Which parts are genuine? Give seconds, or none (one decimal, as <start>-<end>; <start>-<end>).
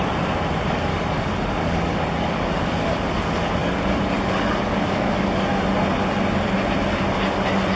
0.0-0.9; 2.6-3.6; 5.5-7.8